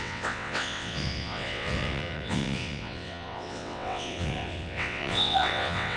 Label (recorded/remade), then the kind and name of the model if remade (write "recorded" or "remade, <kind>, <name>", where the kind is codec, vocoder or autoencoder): remade, vocoder, WaveNeXt